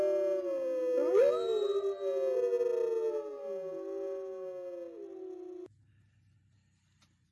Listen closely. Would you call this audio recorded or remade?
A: recorded